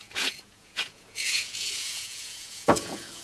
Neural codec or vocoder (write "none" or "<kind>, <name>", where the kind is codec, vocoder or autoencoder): vocoder, Vocos